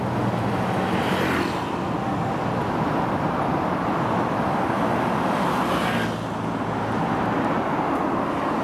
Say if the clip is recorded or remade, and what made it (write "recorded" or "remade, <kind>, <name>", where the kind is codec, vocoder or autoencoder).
recorded